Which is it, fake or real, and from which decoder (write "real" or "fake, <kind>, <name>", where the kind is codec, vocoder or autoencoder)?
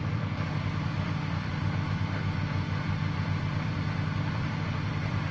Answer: fake, vocoder, BigVGAN v2